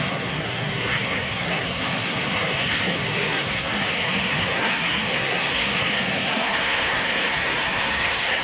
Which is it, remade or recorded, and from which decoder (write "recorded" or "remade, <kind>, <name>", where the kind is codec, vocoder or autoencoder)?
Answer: remade, codec, SNAC